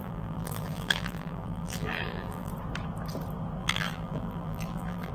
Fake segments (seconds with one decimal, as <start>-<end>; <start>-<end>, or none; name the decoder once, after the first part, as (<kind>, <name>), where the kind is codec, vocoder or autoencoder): 0.0-2.5 (vocoder, BigVGAN v2); 3.6-5.1